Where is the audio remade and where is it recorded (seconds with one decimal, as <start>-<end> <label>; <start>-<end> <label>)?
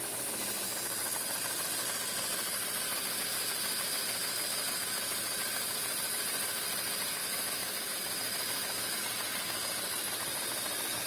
0.0-7.2 recorded; 7.2-9.0 remade; 9.0-11.1 recorded